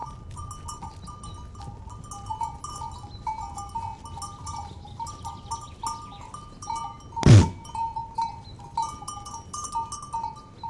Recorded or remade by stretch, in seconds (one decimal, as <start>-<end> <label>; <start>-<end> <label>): 0.0-10.7 recorded